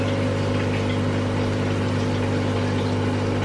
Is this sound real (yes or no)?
no